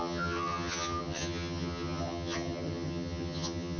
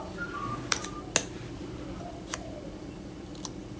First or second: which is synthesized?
first